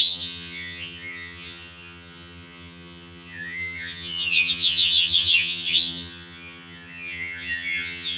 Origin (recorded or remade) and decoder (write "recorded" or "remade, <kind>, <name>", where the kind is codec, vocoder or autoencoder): remade, vocoder, HiFi-GAN